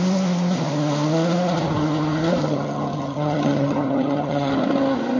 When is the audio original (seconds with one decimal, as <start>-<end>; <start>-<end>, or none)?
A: 0.0-2.4; 4.5-5.2